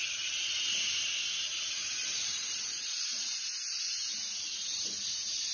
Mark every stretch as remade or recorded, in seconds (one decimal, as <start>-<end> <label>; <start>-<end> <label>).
0.0-1.5 recorded; 1.5-4.8 remade; 4.8-5.5 recorded